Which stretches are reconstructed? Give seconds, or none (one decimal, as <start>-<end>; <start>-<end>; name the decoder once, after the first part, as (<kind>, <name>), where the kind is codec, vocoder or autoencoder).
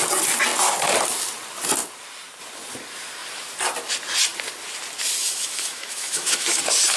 5.2-6.6 (autoencoder, DAC-VAE)